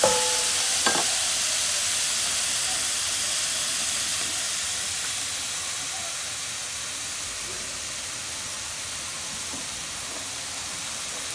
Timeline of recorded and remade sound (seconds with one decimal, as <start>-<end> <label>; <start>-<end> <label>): 0.0-11.3 recorded